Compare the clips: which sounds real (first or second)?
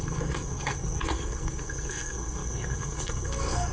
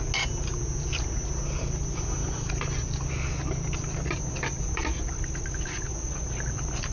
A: second